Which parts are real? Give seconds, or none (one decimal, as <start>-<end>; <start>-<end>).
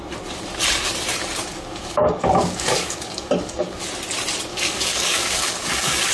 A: 0.0-1.5; 3.8-4.5